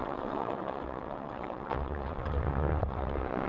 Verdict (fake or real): fake